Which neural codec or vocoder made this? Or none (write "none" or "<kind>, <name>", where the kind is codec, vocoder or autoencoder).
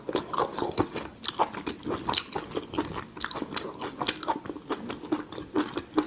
none